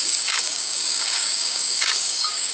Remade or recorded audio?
remade